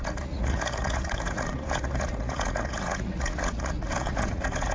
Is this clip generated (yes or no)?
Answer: yes